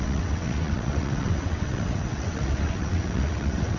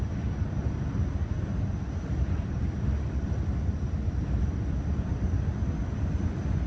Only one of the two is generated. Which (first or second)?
first